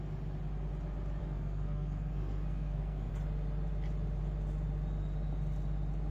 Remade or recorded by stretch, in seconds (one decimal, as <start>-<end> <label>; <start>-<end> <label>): 0.0-1.2 recorded; 1.2-3.1 remade; 3.1-6.1 recorded